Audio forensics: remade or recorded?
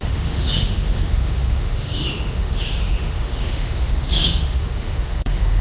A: remade